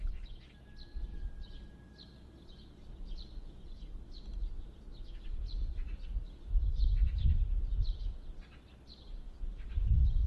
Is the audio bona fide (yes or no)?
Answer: yes